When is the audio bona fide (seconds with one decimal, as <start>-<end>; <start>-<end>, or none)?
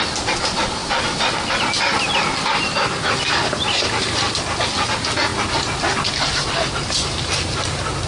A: 0.0-8.1